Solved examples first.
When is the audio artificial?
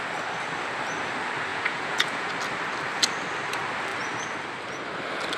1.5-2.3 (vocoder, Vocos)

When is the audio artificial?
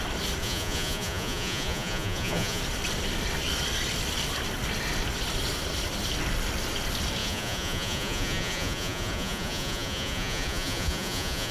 0.4-2.6 (vocoder, Vocos); 7.2-11.5